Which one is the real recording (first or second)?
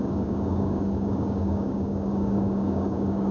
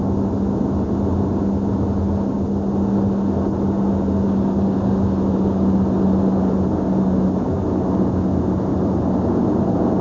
second